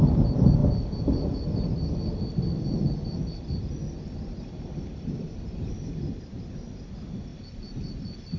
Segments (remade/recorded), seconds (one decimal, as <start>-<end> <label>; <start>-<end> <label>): 0.0-0.6 remade; 0.6-2.9 recorded; 2.9-7.3 remade; 7.3-8.4 recorded